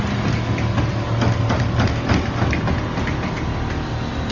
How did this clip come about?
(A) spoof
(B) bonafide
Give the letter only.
B